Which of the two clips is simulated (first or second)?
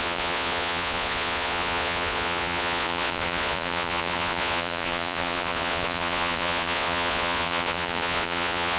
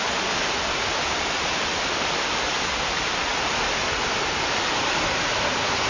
first